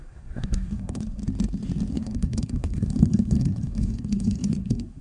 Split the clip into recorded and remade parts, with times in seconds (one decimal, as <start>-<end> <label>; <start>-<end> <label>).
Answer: 0.0-1.2 remade; 1.2-1.9 recorded; 1.9-5.0 remade